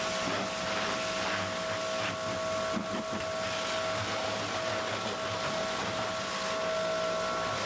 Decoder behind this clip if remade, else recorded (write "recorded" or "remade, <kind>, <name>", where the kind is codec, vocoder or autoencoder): recorded